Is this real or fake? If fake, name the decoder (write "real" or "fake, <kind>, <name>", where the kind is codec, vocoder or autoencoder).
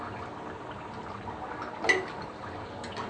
real